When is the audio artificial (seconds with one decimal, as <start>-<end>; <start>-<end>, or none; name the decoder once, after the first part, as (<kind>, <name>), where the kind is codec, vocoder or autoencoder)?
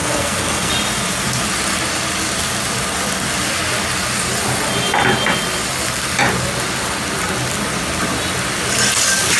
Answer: 0.0-0.7 (codec, SNAC)